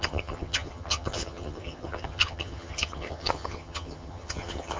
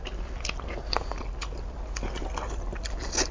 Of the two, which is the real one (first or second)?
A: second